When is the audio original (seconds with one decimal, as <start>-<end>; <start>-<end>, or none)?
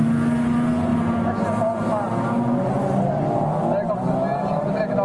0.0-5.0